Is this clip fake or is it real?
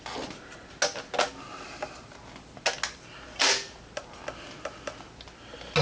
real